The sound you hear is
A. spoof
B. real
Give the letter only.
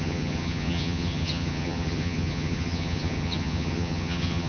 A